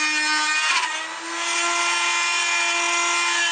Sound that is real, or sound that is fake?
real